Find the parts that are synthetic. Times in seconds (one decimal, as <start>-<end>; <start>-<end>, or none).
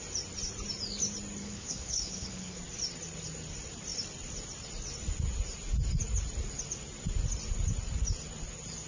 1.4-2.6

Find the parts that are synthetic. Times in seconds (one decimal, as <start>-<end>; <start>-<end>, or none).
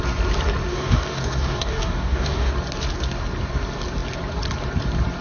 0.7-2.5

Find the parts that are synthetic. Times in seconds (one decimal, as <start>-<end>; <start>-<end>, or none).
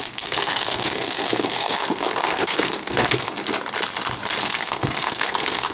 0.0-3.4; 4.4-5.7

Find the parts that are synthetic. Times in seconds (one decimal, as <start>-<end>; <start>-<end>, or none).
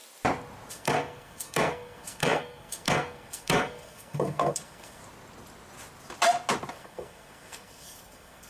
0.7-5.0; 6.7-8.5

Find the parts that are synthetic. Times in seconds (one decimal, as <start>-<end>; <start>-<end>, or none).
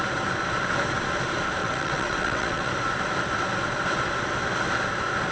1.6-2.7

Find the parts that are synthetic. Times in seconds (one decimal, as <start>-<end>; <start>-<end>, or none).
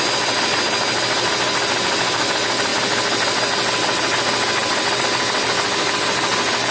none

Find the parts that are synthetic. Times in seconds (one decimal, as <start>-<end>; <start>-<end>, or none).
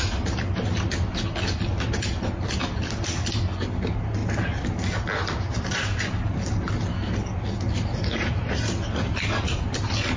7.9-8.5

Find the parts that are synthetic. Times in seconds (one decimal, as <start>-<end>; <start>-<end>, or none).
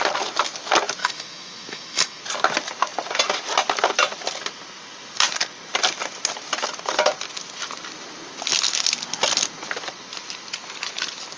1.0-2.2